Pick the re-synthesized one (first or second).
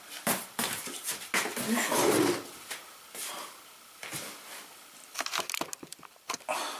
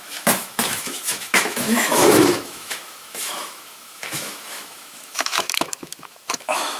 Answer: second